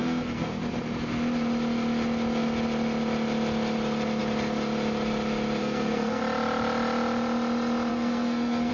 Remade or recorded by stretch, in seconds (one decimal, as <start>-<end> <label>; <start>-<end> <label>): 0.0-0.6 remade; 0.6-5.6 recorded; 5.6-6.2 remade; 6.2-7.9 recorded; 7.9-8.7 remade